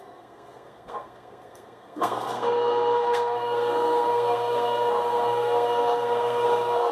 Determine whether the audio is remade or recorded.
remade